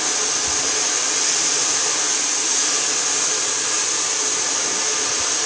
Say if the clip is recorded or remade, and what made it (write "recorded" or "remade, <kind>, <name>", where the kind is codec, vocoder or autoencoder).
recorded